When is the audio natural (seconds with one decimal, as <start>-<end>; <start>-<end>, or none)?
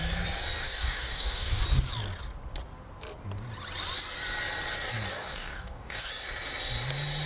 0.0-0.6; 1.6-5.1; 6.1-7.3